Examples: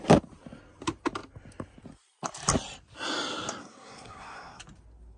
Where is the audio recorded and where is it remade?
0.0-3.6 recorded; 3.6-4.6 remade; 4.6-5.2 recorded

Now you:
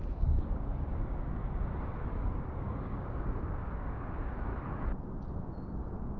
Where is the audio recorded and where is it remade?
0.0-1.4 remade; 1.4-2.1 recorded; 2.1-4.5 remade; 4.5-5.7 recorded; 5.7-6.2 remade

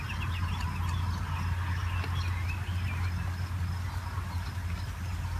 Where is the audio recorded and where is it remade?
0.0-5.4 recorded